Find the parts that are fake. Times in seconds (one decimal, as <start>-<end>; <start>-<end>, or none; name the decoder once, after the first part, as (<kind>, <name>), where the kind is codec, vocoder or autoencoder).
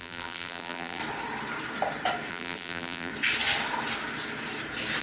0.0-1.0 (vocoder, BigVGAN v2); 2.3-3.1